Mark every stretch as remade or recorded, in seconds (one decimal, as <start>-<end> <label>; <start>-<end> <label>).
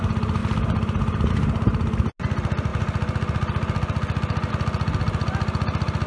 0.0-0.4 recorded; 0.4-1.3 remade; 1.3-6.1 recorded